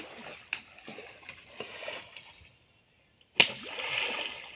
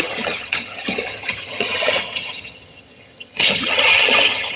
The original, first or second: first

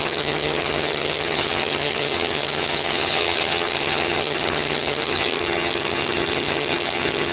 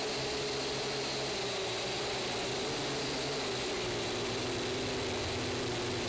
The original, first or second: second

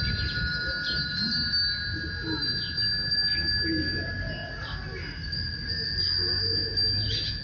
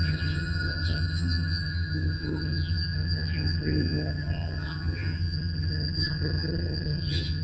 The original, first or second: first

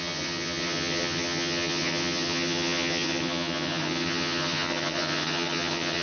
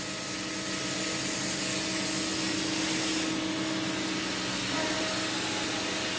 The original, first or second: second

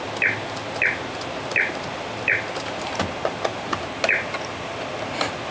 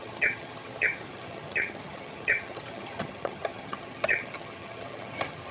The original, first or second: first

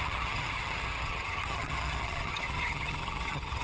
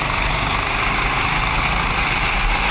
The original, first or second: second